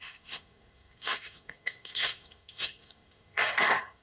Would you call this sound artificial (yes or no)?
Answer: yes